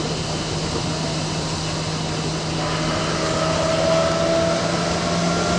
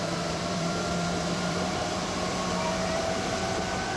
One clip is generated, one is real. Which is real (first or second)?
first